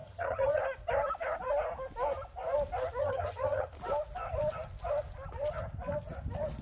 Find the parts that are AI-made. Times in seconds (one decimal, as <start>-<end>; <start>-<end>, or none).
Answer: 0.0-0.6; 3.0-3.7